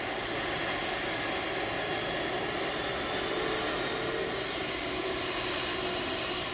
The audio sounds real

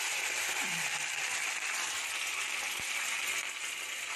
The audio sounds real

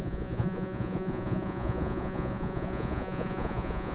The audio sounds fake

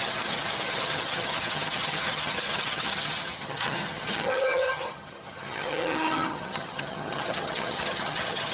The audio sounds fake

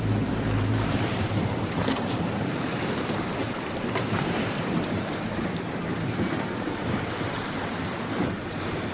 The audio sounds fake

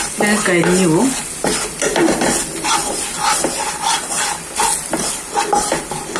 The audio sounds real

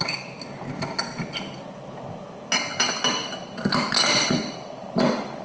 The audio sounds real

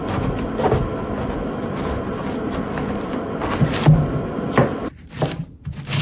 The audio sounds real